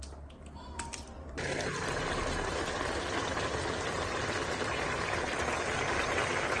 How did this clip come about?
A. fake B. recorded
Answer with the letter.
B